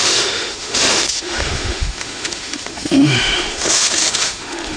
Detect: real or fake fake